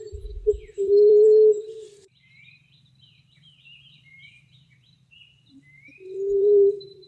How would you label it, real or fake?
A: fake